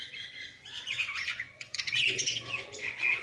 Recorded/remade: remade